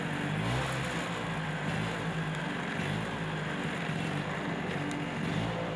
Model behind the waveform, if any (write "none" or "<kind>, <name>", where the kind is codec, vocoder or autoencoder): none